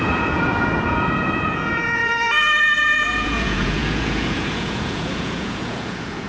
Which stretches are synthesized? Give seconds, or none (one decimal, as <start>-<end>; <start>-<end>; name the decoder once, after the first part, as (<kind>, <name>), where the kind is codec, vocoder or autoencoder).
0.0-2.0 (vocoder, Vocos); 2.6-6.3